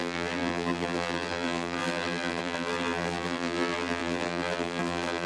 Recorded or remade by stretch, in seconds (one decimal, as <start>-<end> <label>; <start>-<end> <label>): 0.0-5.3 remade